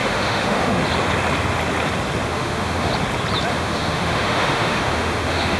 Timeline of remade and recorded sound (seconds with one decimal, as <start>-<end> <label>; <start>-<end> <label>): 0.0-0.8 remade; 0.8-2.3 recorded; 2.3-2.9 remade; 2.9-3.5 recorded; 3.5-5.6 remade

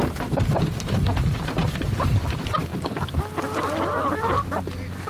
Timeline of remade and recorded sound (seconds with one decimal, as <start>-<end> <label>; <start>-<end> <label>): 0.0-0.5 recorded; 0.5-2.7 remade; 2.7-4.1 recorded; 4.1-5.1 remade

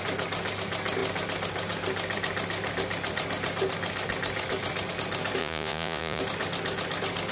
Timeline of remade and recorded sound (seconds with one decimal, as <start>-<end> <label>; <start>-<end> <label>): 0.0-5.4 recorded; 5.4-6.2 remade; 6.2-7.3 recorded

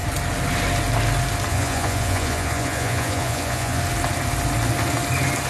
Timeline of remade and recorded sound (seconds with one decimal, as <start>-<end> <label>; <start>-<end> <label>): 0.0-1.5 recorded; 1.5-3.8 remade; 3.8-5.5 recorded

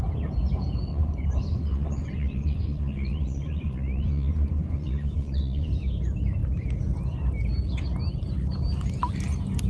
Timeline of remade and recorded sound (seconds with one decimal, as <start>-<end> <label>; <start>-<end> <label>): 0.0-0.9 recorded; 0.9-5.7 remade; 5.7-9.7 recorded

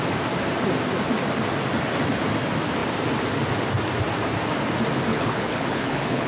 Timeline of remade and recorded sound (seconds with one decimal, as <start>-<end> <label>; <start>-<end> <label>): 0.0-5.1 recorded; 5.1-6.3 remade

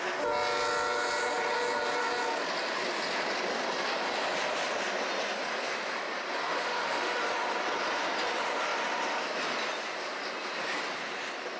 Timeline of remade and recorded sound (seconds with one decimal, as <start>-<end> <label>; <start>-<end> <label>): 0.0-6.4 recorded; 6.4-7.2 remade; 7.2-11.6 recorded